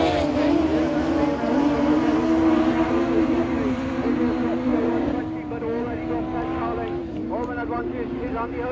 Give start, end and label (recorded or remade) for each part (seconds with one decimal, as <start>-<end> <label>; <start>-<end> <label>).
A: 0.0-4.7 recorded; 4.7-5.2 remade; 5.2-8.7 recorded